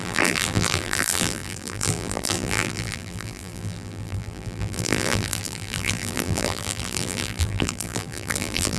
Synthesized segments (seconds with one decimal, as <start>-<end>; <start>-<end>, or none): 0.0-8.8